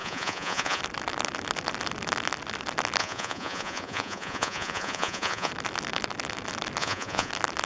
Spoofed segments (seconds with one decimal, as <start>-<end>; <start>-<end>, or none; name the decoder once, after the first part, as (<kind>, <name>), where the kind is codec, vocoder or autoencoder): 0.0-0.8 (vocoder, Vocos); 3.0-5.5; 6.8-7.3